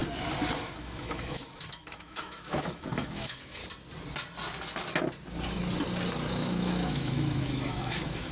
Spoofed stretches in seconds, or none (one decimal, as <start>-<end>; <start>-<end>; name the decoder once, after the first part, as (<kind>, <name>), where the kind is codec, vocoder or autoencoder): 0.6-3.6 (autoencoder, DAC-VAE); 6.3-8.3